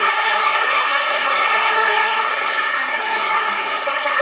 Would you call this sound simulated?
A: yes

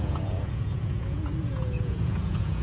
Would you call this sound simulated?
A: yes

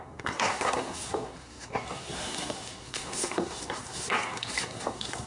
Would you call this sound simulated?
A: yes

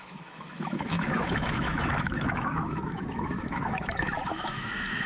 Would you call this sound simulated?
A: yes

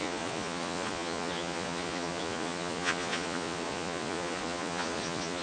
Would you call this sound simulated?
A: yes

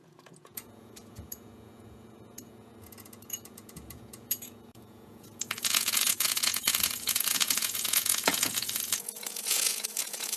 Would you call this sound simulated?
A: yes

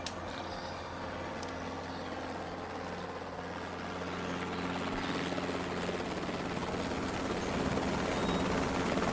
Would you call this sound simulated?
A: no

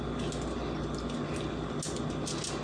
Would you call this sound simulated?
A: no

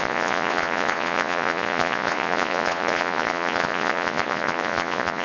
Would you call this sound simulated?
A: yes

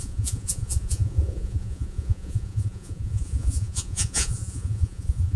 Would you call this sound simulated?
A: yes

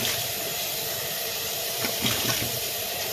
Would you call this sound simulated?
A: yes